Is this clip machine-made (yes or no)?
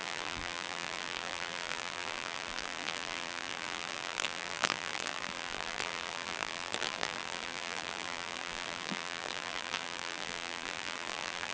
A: yes